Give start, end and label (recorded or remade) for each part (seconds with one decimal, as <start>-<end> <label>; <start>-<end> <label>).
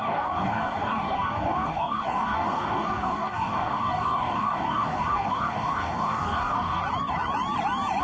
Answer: 0.0-6.8 remade; 6.8-8.0 recorded